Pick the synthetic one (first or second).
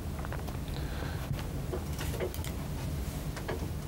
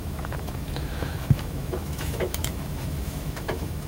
second